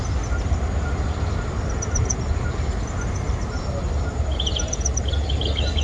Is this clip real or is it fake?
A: real